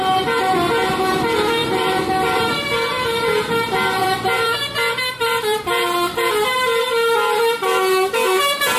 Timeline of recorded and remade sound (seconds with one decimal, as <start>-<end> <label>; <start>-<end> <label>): 0.0-1.6 recorded; 1.6-2.4 remade; 2.4-4.0 recorded; 4.0-6.3 remade; 6.3-8.8 recorded